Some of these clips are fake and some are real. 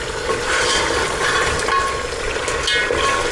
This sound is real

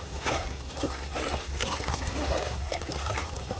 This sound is fake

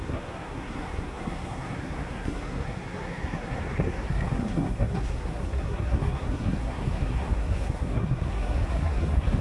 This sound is fake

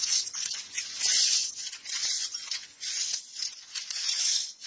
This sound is fake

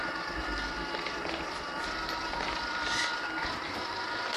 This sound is real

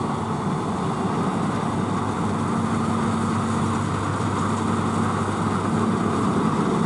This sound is real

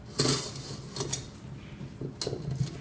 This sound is real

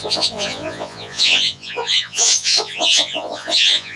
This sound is fake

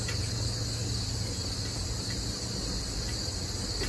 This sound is real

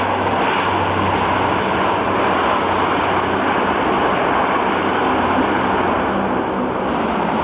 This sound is real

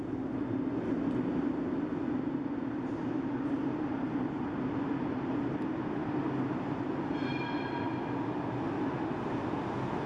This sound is real